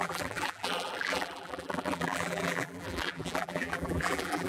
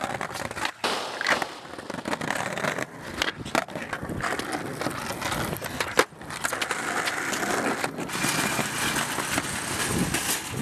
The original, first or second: second